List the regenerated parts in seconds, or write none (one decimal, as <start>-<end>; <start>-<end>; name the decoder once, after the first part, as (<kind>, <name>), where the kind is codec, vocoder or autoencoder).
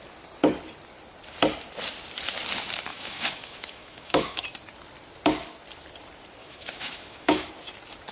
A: 2.9-4.4 (autoencoder, DAC-VAE); 6.4-7.5